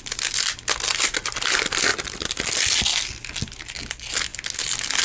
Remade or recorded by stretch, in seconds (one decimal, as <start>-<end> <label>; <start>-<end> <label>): 0.0-1.9 recorded; 1.9-2.4 remade; 2.4-5.0 recorded